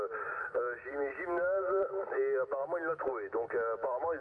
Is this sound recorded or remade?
recorded